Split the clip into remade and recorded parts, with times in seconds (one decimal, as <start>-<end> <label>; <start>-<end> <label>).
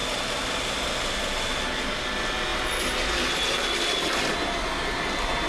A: 0.0-5.5 recorded